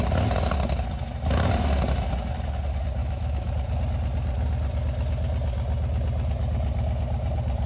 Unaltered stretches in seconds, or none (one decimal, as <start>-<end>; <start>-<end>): 0.0-3.0; 3.5-7.7